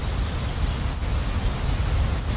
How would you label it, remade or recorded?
recorded